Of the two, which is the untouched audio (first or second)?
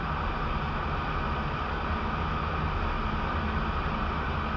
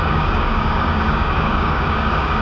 first